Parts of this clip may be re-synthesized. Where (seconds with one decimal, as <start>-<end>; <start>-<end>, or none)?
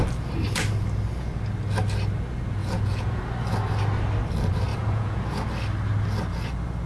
2.6-3.2; 4.7-5.2